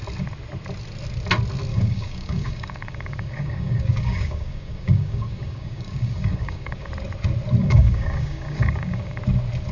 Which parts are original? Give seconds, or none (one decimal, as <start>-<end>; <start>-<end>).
0.0-1.7; 6.9-7.6; 9.2-9.7